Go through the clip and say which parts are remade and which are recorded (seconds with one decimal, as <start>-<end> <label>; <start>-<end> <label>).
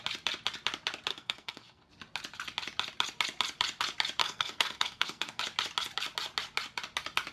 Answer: 0.0-1.1 recorded; 1.1-1.9 remade; 1.9-4.2 recorded; 4.2-5.4 remade; 5.4-7.3 recorded